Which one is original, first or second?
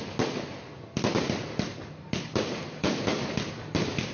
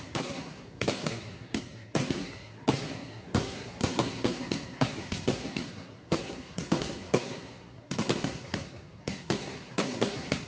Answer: first